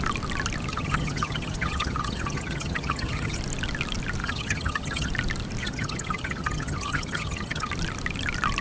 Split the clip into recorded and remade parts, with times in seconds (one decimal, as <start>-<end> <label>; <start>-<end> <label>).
0.0-0.7 recorded; 0.7-3.4 remade; 3.4-4.2 recorded; 4.2-5.1 remade; 5.1-5.6 recorded; 5.6-7.7 remade; 7.7-8.6 recorded